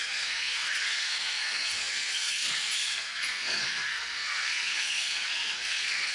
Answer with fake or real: fake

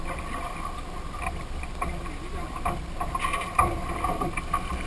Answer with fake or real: real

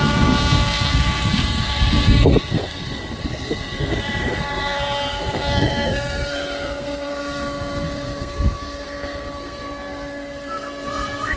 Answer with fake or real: fake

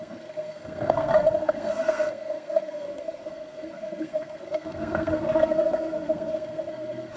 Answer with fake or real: fake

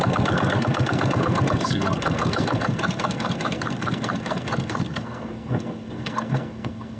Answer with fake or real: fake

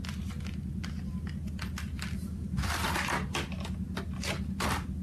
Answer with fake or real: real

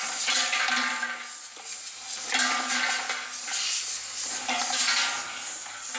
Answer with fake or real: real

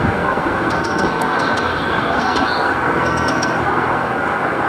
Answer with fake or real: fake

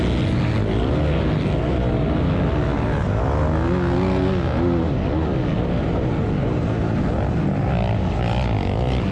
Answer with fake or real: real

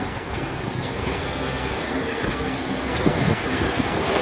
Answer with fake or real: fake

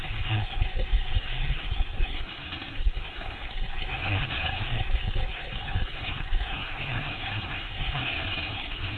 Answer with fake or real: fake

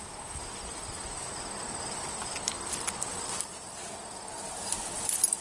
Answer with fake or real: real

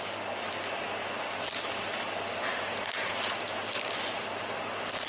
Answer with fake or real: real